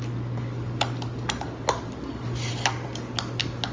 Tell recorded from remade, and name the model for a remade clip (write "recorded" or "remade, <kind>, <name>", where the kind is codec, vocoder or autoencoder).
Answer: recorded